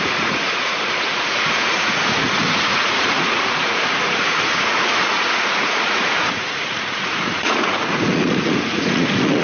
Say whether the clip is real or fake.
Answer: fake